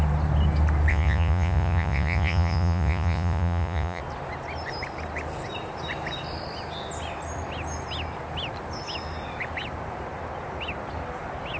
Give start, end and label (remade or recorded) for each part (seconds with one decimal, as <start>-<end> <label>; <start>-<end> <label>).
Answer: 0.0-0.9 recorded; 0.9-4.0 remade; 4.0-11.6 recorded